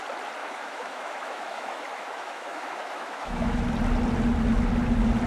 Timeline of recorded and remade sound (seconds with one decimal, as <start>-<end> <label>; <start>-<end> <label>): 0.0-0.4 recorded; 0.4-3.6 remade; 3.6-5.3 recorded